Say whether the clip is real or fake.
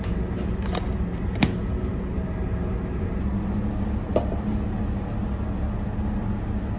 real